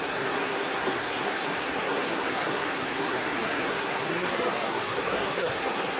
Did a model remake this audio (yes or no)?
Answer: yes